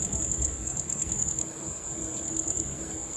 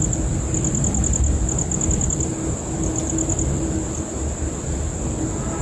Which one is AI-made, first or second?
first